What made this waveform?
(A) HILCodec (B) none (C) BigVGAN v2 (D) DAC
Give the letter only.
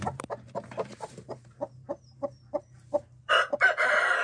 C